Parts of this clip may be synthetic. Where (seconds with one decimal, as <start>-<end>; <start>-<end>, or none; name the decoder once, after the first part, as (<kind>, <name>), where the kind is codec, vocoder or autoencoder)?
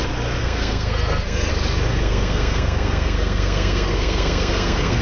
0.4-1.5 (codec, SNAC); 1.9-5.0